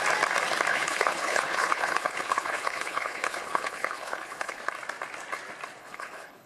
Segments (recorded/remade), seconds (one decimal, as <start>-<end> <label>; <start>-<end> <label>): 0.0-0.7 recorded; 0.7-4.6 remade; 4.6-5.8 recorded; 5.8-6.5 remade